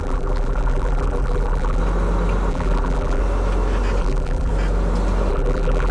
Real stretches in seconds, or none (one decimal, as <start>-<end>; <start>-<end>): 1.8-2.5; 3.2-4.0; 4.5-5.3